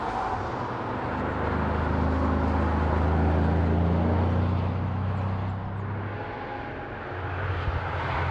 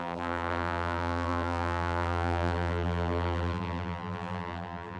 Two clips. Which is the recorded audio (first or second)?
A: first